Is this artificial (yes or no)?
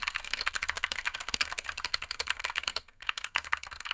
yes